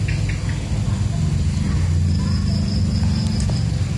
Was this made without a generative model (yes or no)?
yes